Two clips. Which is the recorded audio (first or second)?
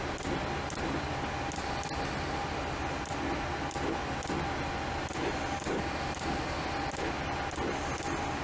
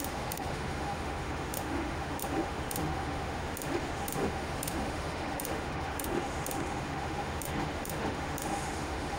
first